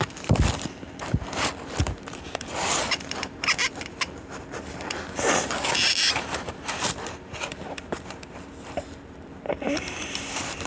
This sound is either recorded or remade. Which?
remade